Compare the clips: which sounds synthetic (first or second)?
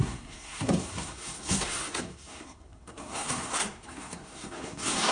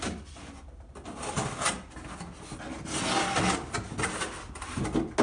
first